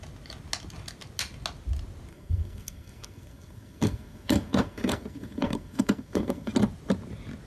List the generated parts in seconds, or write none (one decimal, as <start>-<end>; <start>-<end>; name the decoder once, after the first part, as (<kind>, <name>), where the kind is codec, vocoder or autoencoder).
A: 2.1-6.5 (codec, SNAC)